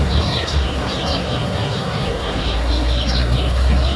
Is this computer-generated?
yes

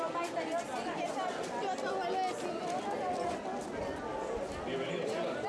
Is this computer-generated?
no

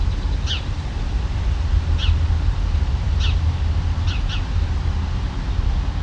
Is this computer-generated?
no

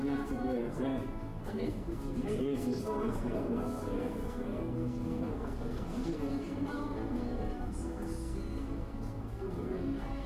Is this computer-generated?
yes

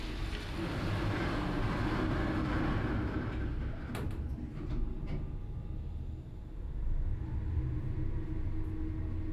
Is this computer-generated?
no